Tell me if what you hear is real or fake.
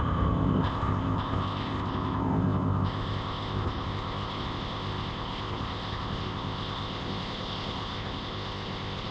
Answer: fake